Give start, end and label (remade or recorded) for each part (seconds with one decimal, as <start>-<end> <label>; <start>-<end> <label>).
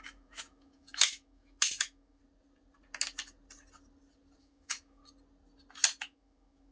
0.0-2.2 remade; 2.2-4.4 recorded; 4.4-5.0 remade; 5.0-6.0 recorded; 6.0-6.7 remade